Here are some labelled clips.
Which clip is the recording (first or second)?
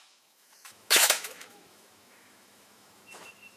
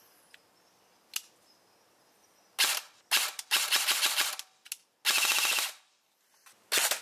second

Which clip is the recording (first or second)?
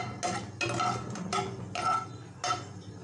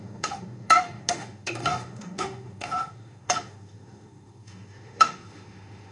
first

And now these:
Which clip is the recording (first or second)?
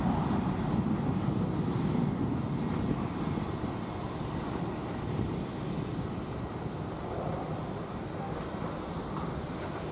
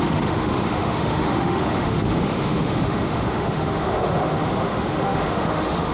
first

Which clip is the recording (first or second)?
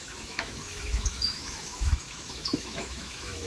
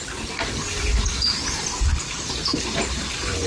second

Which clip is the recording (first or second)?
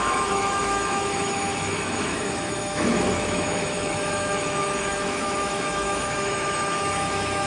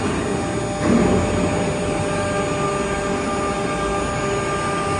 second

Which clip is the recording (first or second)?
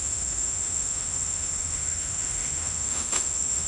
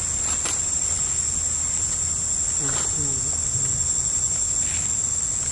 second